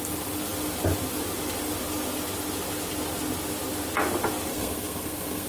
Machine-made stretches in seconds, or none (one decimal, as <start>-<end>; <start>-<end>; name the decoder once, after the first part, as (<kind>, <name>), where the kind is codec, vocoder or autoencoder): 4.5-5.5 (codec, SNAC)